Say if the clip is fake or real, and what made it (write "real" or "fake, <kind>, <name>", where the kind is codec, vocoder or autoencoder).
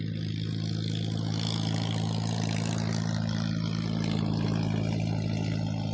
real